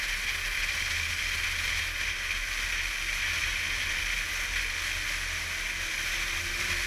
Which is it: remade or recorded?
recorded